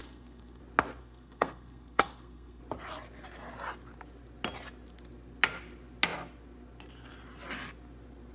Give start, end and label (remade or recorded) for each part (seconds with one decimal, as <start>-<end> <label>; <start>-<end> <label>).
0.0-0.6 remade; 0.6-1.0 recorded; 1.0-2.6 remade; 2.6-8.3 recorded